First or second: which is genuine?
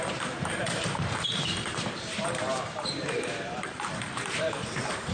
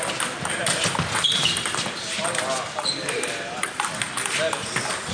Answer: second